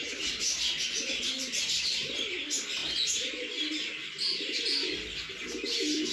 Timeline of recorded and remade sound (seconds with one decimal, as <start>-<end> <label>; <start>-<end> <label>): 0.0-6.1 recorded